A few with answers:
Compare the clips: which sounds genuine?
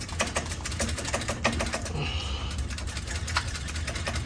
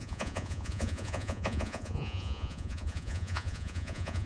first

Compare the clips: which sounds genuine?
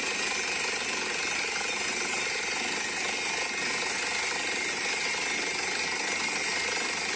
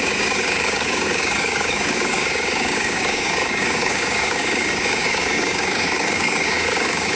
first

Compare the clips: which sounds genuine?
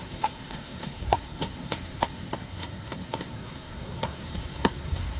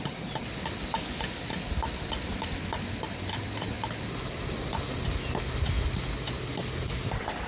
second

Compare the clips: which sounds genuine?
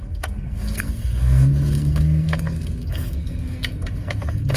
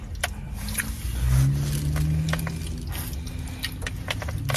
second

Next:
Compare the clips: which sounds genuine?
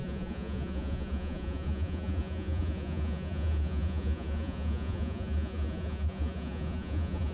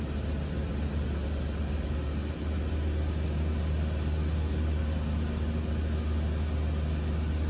second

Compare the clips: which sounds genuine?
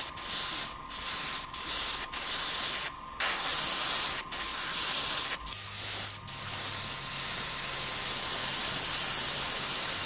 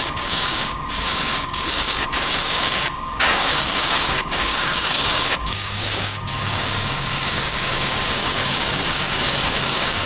first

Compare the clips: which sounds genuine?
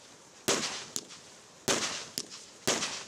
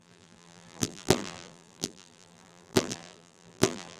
first